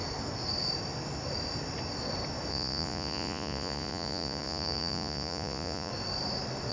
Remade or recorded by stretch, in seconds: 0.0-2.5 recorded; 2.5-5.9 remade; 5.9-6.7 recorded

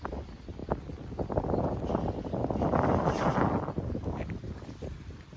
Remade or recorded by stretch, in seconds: 0.0-5.4 recorded

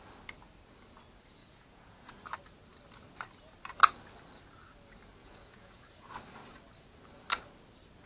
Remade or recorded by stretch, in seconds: 0.0-1.4 recorded; 1.4-2.1 remade; 2.1-5.2 recorded; 5.2-6.1 remade; 6.1-8.1 recorded